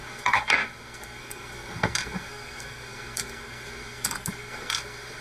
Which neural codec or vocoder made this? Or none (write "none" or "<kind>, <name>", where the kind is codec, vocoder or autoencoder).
codec, SNAC